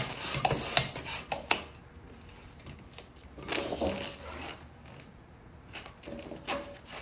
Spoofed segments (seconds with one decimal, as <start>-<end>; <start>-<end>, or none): 5.1-5.9